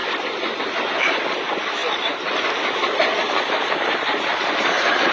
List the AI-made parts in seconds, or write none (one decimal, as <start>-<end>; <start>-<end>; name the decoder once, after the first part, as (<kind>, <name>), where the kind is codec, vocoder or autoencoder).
none